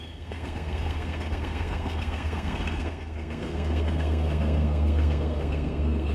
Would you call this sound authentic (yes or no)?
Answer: no